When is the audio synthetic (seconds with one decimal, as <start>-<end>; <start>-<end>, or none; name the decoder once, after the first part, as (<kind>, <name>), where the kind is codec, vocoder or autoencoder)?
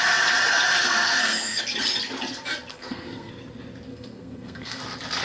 0.8-1.6 (codec, SNAC); 2.7-3.3; 3.9-4.8